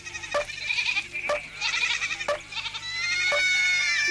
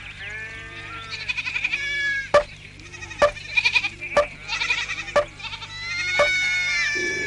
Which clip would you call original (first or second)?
second